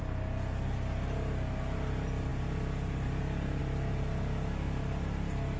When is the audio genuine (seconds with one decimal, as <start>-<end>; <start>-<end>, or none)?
0.0-5.6